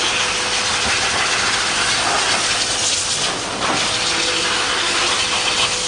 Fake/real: real